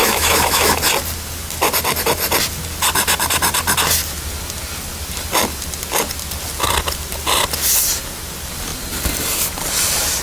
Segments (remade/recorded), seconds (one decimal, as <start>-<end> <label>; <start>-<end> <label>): 0.0-0.8 remade; 0.8-10.2 recorded